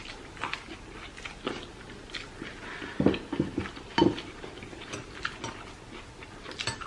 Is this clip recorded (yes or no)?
yes